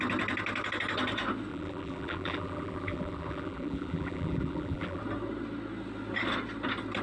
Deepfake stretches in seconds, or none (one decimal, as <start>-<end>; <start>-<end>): 1.5-5.0